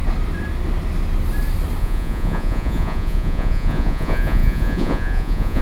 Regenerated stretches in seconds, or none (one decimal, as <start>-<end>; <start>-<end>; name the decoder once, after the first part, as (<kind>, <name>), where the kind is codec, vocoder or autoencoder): 1.8-5.6 (vocoder, Vocos)